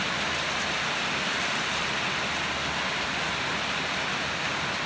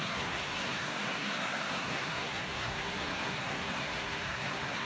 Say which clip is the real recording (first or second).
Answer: first